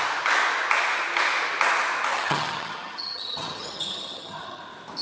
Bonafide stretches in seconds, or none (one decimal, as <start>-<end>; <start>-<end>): 0.0-2.1; 4.6-5.0